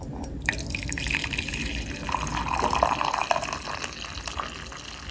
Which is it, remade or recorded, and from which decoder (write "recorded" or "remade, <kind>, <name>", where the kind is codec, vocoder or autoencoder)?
recorded